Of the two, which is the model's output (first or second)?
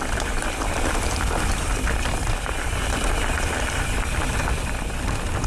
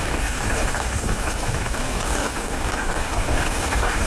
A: second